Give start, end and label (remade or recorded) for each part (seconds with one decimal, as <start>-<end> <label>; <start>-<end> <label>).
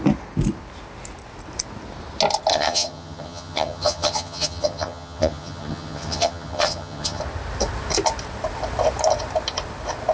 0.0-2.5 recorded; 2.5-7.2 remade; 7.2-10.1 recorded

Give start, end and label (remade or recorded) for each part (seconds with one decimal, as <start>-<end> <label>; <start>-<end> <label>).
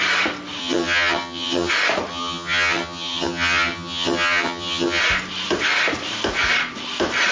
0.0-0.6 recorded; 0.6-1.7 remade; 1.7-2.1 recorded; 2.1-5.0 remade; 5.0-7.3 recorded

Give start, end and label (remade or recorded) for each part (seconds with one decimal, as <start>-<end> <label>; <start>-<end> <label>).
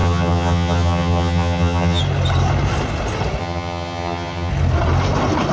0.0-2.0 remade; 2.0-3.4 recorded; 3.4-4.5 remade; 4.5-5.5 recorded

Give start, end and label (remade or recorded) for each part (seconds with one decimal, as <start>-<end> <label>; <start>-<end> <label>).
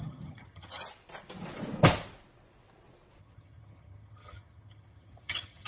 0.0-0.8 remade; 0.8-3.2 recorded; 3.2-5.7 remade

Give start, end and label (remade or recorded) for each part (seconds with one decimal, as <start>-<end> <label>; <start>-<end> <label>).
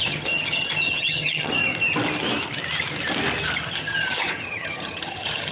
0.0-1.6 remade; 1.6-3.7 recorded; 3.7-5.5 remade